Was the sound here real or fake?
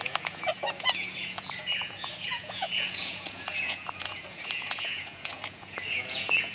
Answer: fake